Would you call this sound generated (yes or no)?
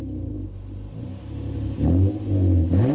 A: no